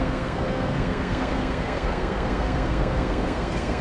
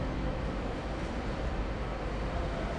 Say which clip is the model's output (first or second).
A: first